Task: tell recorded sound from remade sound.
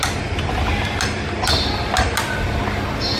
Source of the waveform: recorded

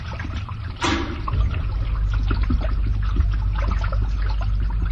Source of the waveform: recorded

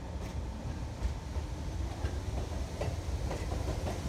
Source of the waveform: recorded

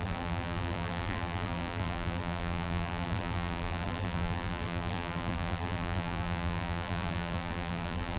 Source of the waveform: remade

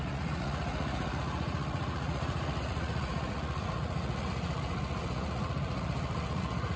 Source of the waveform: remade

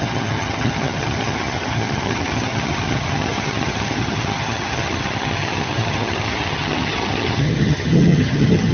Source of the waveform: remade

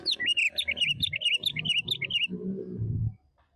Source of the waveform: remade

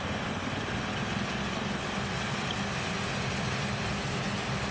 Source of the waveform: recorded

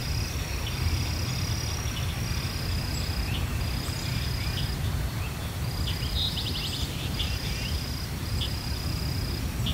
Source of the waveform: remade